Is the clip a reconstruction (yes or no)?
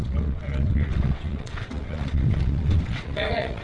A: yes